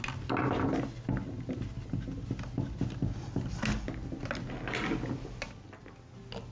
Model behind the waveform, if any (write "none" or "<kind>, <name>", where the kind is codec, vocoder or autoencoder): none